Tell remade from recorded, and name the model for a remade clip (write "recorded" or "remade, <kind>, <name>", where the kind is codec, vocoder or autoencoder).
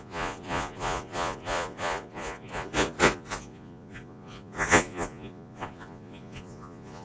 remade, vocoder, Vocos